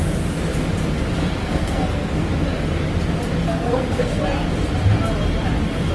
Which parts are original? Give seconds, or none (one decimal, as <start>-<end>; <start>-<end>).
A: 0.0-1.4; 2.3-3.4; 4.2-5.9